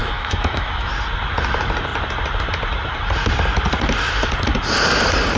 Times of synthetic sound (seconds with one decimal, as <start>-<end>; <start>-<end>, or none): 0.0-0.9

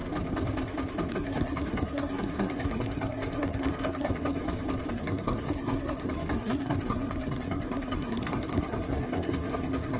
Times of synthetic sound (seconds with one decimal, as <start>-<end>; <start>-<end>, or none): 1.1-4.4; 4.9-10.0